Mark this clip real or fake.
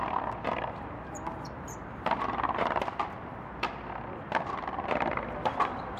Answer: fake